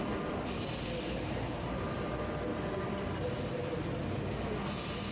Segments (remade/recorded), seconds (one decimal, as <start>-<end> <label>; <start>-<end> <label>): 0.0-2.5 recorded; 2.5-3.4 remade; 3.4-5.1 recorded